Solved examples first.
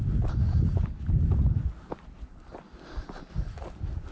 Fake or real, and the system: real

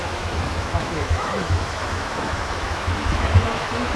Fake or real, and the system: fake, autoencoder, DAC-VAE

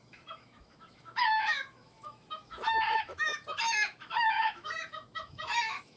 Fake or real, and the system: fake, autoencoder, DAC-VAE